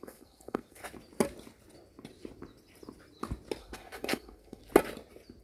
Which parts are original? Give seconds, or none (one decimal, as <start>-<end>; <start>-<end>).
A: 0.8-3.6; 4.6-5.4